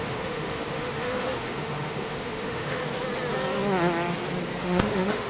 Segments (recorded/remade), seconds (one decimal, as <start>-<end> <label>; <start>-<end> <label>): 0.0-2.8 remade; 2.8-4.6 recorded; 4.6-5.3 remade